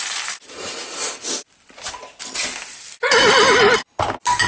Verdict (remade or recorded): recorded